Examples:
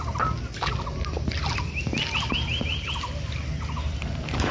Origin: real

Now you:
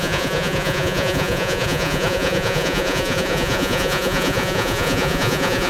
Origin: fake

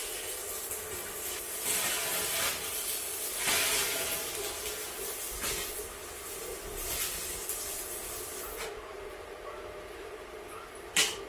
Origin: real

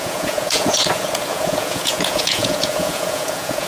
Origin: fake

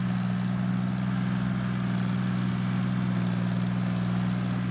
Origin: real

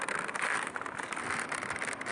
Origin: real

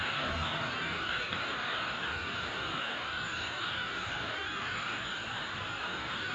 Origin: fake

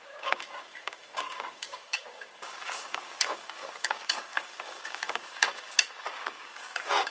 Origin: fake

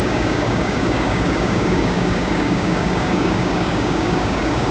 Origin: fake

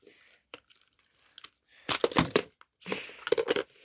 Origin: real